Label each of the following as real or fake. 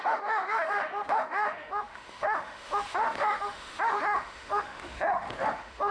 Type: fake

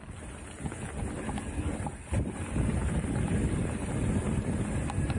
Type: real